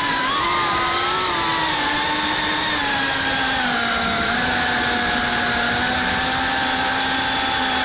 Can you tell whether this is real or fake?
real